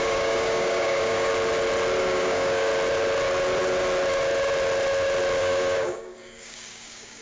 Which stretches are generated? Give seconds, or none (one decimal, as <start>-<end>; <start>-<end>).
0.0-1.3; 2.0-2.7; 5.4-7.2